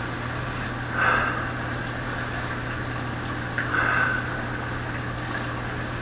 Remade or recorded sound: recorded